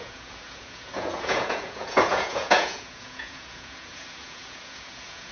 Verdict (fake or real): fake